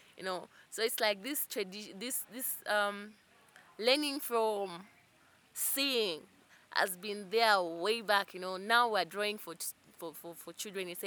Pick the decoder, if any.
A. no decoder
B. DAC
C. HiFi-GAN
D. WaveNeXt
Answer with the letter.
A